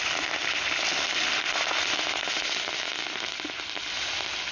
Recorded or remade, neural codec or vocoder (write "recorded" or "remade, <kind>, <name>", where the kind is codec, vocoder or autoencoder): recorded